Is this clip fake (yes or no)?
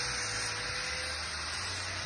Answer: no